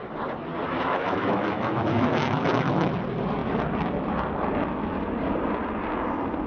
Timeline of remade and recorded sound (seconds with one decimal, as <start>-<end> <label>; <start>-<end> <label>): 0.0-0.6 recorded; 0.6-2.9 remade; 2.9-6.5 recorded